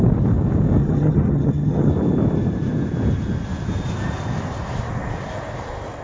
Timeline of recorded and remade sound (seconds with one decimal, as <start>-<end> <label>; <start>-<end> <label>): 0.0-0.8 recorded; 0.8-1.9 remade; 1.9-6.0 recorded